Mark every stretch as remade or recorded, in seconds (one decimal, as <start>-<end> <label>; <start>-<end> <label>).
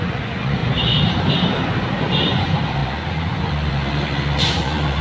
0.0-0.6 remade; 0.6-2.0 recorded; 2.0-5.0 remade